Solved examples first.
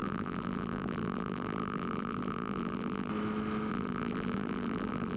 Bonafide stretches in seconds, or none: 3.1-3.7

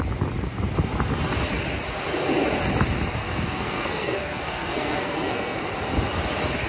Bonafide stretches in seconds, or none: 0.0-3.2; 5.7-6.7

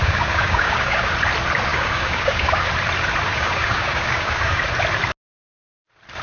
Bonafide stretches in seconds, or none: 1.1-1.7; 2.7-3.3; 4.6-6.2

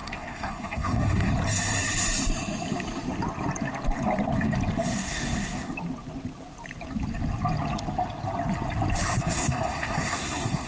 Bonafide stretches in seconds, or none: 1.3-4.9; 5.7-9.2